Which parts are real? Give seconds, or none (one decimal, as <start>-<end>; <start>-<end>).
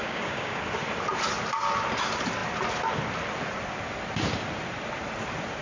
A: 0.6-5.6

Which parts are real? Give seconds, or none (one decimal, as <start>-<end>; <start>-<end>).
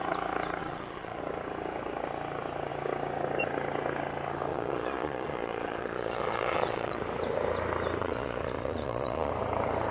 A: 0.0-0.6; 1.2-4.5; 7.0-8.0; 9.3-9.9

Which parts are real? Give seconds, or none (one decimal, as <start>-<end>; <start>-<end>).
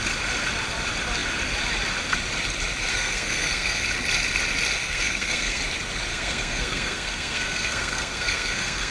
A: 0.0-2.9; 3.8-4.8; 5.6-6.1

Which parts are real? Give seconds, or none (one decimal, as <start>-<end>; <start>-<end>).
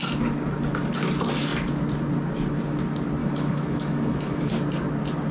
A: 0.0-3.2; 4.5-5.3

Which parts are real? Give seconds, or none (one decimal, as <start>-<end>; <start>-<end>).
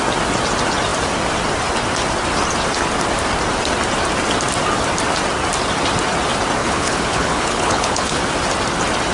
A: 0.0-6.6; 8.2-9.1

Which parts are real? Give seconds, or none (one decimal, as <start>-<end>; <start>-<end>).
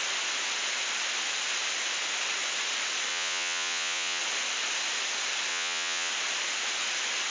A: 0.0-3.1; 4.2-5.5; 6.1-7.3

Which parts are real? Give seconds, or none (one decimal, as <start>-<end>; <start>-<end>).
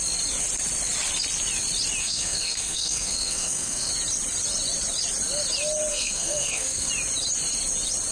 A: 0.0-2.0; 3.9-5.9; 6.9-8.1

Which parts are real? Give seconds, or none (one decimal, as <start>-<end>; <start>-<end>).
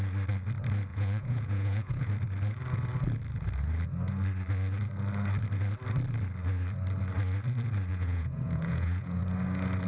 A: 0.0-0.9; 2.1-7.9; 9.2-9.9